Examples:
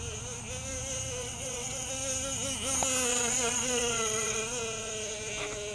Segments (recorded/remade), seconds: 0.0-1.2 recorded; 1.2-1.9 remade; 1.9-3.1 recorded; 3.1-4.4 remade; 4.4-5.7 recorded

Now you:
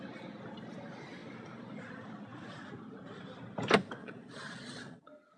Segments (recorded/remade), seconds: 0.0-4.0 recorded; 4.0-5.0 remade; 5.0-5.4 recorded

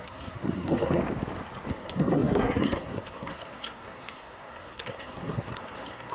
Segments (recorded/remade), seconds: 0.0-1.0 remade; 1.0-1.7 recorded; 1.7-6.1 remade

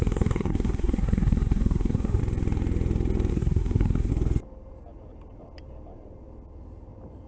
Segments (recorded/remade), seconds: 0.0-2.2 remade; 2.2-3.3 recorded; 3.3-4.1 remade; 4.1-7.3 recorded